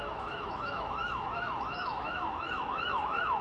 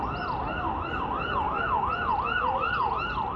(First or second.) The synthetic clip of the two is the first